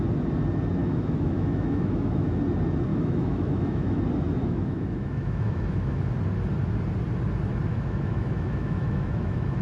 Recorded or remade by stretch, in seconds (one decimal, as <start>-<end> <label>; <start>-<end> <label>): 0.0-0.8 recorded; 0.8-2.4 remade; 2.4-2.9 recorded; 2.9-4.0 remade; 4.0-4.4 recorded; 4.4-6.0 remade; 6.0-7.7 recorded; 7.7-9.6 remade